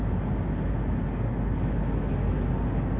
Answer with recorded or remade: recorded